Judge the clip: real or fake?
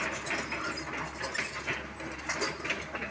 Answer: real